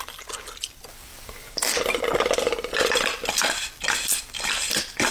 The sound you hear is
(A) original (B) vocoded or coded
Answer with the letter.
B